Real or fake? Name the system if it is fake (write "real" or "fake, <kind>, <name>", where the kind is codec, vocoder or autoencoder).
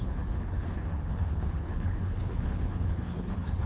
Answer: fake, codec, HILCodec